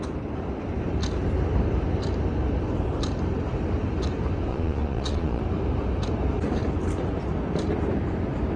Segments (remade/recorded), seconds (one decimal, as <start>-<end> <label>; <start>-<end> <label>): 0.0-4.5 recorded; 4.5-5.4 remade; 5.4-8.6 recorded